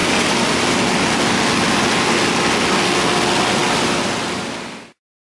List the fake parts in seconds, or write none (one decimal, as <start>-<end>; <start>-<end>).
none